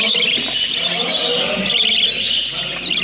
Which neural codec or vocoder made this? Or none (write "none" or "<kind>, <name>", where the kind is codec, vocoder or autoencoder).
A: none